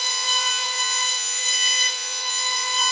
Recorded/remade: remade